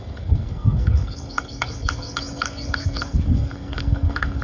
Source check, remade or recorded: remade